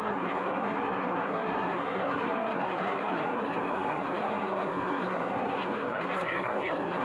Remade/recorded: remade